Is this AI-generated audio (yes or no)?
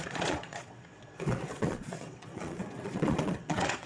yes